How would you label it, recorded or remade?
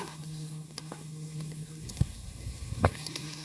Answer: remade